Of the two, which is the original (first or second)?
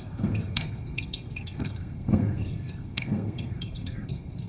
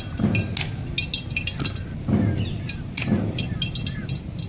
second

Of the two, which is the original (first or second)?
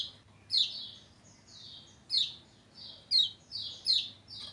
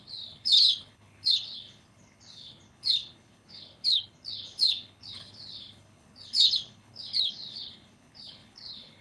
first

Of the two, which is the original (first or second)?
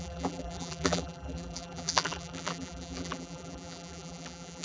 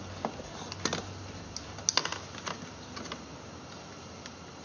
second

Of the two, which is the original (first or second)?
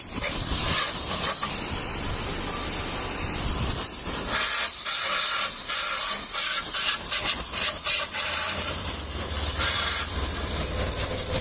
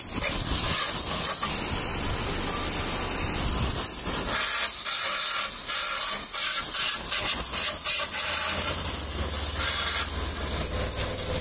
second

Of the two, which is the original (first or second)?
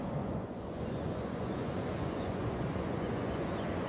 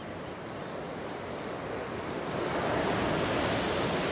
second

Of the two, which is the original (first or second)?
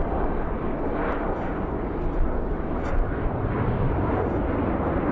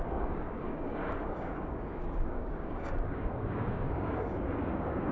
first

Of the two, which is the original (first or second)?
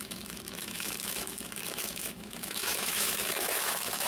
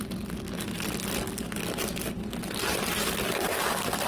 second